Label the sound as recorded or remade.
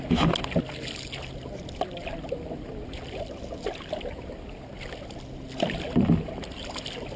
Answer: recorded